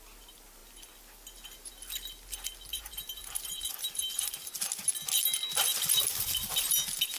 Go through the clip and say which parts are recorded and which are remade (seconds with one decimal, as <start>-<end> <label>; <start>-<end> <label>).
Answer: 0.0-2.7 recorded; 2.7-4.5 remade; 4.5-5.7 recorded; 5.7-6.6 remade; 6.6-7.2 recorded